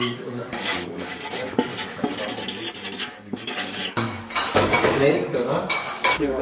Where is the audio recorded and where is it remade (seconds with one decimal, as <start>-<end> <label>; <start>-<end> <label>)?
0.0-1.7 remade; 1.7-3.0 recorded; 3.0-6.4 remade